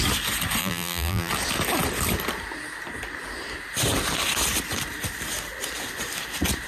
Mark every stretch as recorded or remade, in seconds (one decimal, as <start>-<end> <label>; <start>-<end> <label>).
0.0-0.6 recorded; 0.6-1.3 remade; 1.3-6.7 recorded